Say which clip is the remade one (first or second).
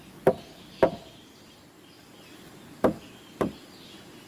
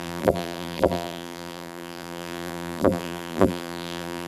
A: second